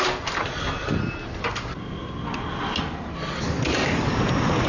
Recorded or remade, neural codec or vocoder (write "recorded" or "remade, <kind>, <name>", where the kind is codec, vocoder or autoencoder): recorded